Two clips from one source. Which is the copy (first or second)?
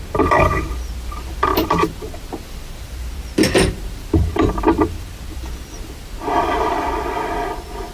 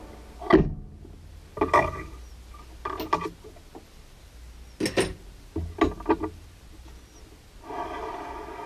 first